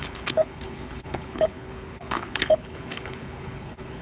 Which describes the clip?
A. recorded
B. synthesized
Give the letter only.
B